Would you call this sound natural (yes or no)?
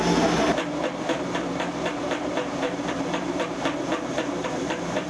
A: no